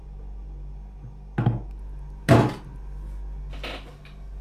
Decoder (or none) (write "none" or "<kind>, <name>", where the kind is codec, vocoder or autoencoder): none